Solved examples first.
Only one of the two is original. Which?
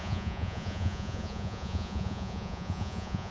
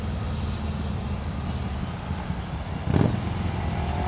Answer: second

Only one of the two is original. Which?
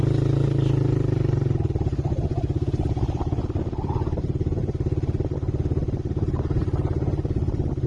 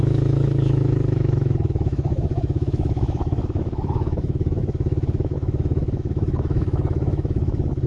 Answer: first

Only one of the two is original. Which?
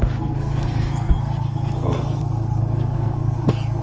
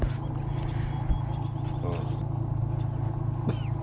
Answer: second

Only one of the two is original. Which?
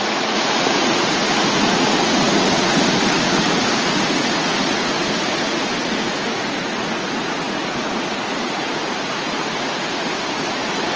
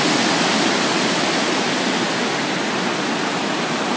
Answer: second